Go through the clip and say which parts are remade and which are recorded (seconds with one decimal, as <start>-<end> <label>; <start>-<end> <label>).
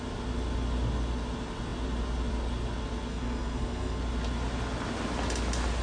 0.0-3.1 recorded; 3.1-4.0 remade; 4.0-5.8 recorded